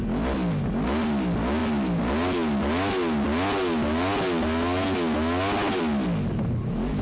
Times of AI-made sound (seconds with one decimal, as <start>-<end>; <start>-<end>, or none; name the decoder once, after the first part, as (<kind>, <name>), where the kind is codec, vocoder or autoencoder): none